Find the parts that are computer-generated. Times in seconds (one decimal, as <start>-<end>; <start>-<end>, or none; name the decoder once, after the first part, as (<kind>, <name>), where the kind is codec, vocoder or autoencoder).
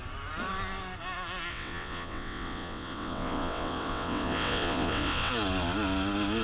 1.5-5.3 (vocoder, WaveNeXt)